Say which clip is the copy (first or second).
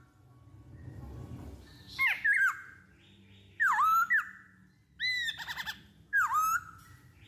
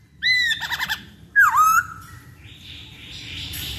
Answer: second